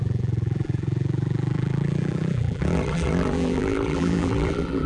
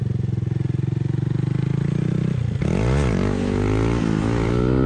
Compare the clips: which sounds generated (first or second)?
first